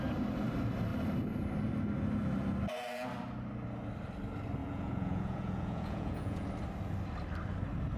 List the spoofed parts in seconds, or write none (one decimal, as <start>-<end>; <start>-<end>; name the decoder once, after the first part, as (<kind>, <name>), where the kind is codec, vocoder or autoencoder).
4.6-6.5 (vocoder, Vocos)